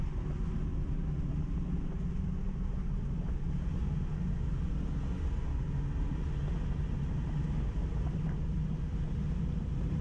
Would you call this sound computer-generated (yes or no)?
no